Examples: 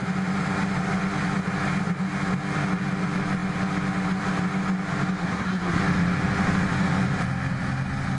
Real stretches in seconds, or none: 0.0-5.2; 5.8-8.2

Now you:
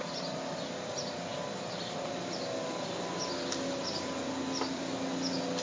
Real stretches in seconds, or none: 0.0-5.6

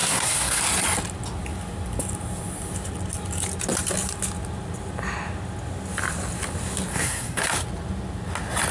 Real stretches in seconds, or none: 0.6-6.9; 7.4-8.7

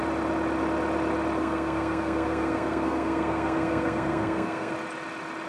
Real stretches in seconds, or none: 0.0-1.4; 4.7-5.5

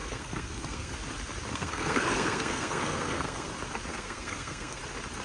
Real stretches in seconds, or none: 0.9-1.5; 3.5-3.9; 4.8-5.2

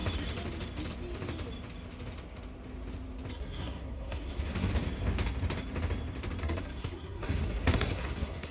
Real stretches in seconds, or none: 0.0-3.3; 4.7-6.4

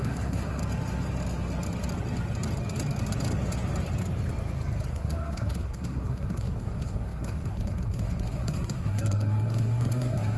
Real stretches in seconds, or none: 0.6-4.9

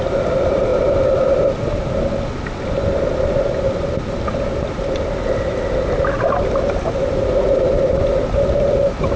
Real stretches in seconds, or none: 0.0-9.2